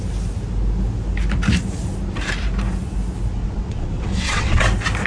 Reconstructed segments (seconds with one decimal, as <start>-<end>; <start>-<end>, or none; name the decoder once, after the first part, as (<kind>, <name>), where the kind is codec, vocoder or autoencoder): 3.4-4.6 (vocoder, WaveNeXt)

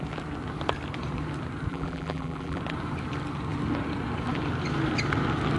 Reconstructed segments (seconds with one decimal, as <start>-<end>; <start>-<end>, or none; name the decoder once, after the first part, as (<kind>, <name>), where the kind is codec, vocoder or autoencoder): 1.7-2.6 (vocoder, BigVGAN v2)

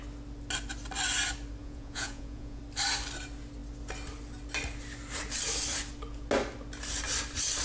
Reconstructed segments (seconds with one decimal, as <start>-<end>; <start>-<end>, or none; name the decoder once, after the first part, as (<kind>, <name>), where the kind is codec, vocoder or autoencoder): 1.6-2.6 (vocoder, Vocos)